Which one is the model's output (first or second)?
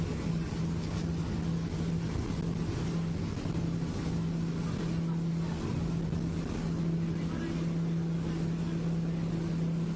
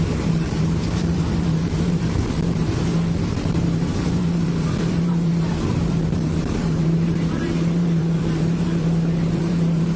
second